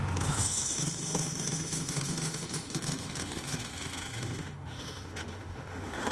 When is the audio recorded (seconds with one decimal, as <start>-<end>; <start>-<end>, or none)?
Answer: none